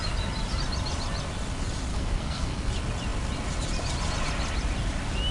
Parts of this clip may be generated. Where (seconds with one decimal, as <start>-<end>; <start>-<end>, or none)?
1.9-2.7